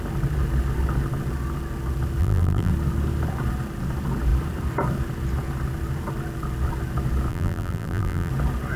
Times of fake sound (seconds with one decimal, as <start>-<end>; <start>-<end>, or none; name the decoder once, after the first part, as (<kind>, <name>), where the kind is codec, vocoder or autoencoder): 2.2-2.7 (vocoder, BigVGAN v2); 7.3-8.3